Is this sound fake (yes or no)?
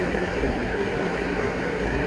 yes